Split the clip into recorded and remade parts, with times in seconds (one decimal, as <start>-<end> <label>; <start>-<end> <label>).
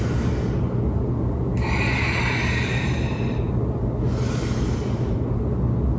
0.0-6.0 recorded